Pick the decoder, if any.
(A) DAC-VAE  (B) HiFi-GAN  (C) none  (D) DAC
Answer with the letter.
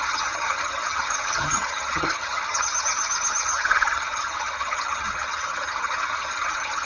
B